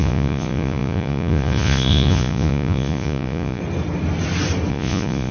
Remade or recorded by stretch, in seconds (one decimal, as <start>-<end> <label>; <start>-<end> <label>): 0.0-3.6 remade; 3.6-4.7 recorded; 4.7-5.3 remade